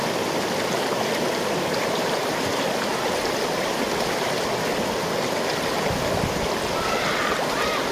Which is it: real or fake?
real